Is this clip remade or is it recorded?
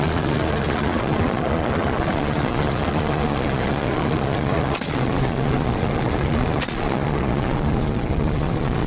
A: remade